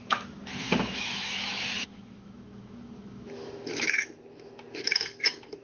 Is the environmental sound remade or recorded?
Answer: remade